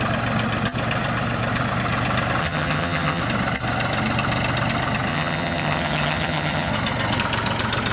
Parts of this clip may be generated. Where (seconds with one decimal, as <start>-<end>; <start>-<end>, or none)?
2.4-3.2; 5.1-6.7